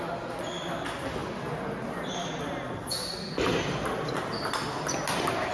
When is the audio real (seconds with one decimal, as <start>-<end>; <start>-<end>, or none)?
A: 0.0-5.5